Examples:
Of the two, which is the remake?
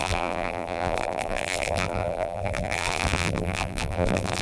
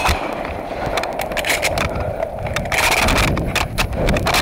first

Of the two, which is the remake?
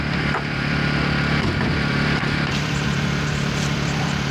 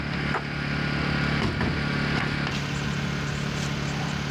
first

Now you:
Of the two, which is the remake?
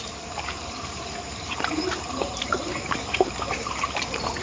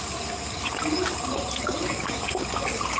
first